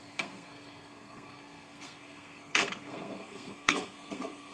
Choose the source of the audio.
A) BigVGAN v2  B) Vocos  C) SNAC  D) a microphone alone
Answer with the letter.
C